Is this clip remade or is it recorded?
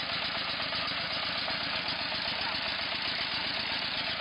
recorded